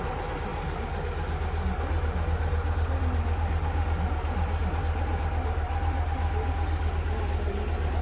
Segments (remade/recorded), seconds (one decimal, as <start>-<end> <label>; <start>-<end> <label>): 0.0-8.0 recorded